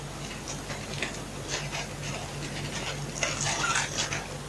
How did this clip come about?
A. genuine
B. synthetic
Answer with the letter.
A